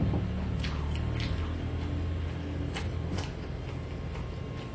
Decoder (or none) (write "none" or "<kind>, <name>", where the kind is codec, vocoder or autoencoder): none